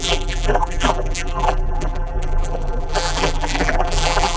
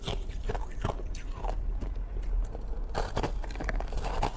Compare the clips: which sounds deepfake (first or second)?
first